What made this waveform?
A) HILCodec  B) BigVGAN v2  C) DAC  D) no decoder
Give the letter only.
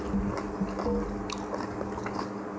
D